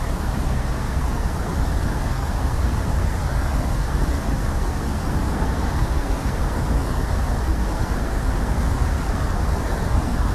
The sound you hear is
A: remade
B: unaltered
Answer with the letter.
A